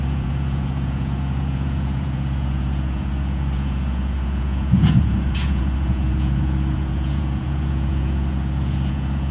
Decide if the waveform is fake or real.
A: fake